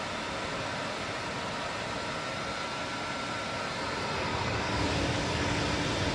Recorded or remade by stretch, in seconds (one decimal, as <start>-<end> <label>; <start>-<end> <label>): 0.0-4.3 recorded; 4.3-5.6 remade; 5.6-6.1 recorded

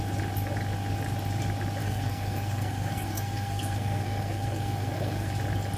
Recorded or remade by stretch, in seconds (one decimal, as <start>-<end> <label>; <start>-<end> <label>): 0.0-1.8 recorded; 1.8-5.3 remade; 5.3-5.8 recorded

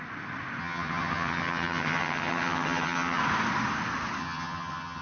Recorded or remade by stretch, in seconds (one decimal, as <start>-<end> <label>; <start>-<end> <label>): 0.0-0.6 recorded; 0.6-3.2 remade; 3.2-4.2 recorded; 4.2-5.0 remade

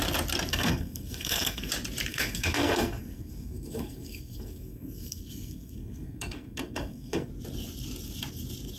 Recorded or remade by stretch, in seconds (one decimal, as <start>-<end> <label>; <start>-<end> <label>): 0.0-0.5 recorded; 0.5-1.7 remade; 1.7-2.1 recorded; 2.1-7.3 remade; 7.3-8.8 recorded

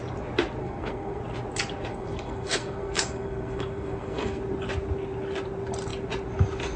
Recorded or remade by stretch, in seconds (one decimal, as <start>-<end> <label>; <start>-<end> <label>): 0.0-0.6 recorded; 0.6-1.2 remade; 1.2-1.9 recorded; 1.9-4.4 remade; 4.4-6.8 recorded

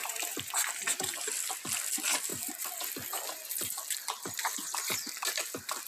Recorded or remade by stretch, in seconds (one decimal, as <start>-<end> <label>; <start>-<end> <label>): 0.0-5.9 recorded